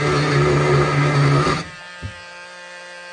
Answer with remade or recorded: recorded